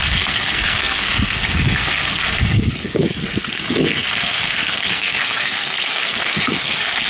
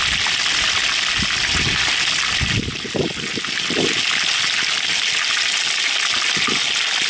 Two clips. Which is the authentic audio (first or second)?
second